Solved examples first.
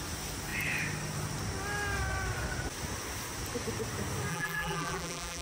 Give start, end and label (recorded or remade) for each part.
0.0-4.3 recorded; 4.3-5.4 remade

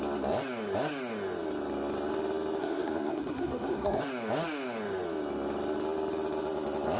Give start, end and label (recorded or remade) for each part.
0.0-2.6 recorded; 2.6-4.0 remade; 4.0-7.0 recorded

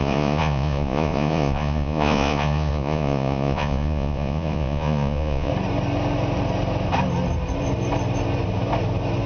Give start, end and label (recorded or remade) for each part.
0.0-5.5 remade; 5.5-9.3 recorded

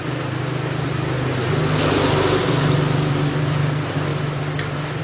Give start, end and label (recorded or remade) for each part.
0.0-5.0 recorded

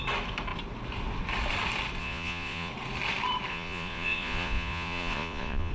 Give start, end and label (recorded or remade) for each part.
0.0-2.0 recorded; 2.0-2.7 remade; 2.7-3.5 recorded; 3.5-5.7 remade

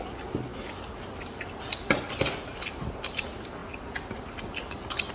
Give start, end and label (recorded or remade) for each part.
0.0-5.1 recorded